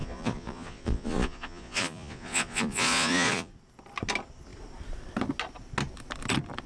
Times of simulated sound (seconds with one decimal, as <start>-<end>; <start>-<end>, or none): 0.0-3.5